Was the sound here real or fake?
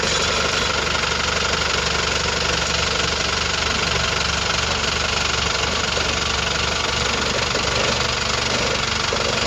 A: real